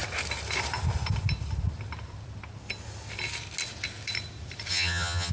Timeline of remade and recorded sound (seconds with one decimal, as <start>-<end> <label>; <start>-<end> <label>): 0.0-4.7 recorded; 4.7-5.3 remade